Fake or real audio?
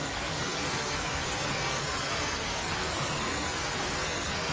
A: fake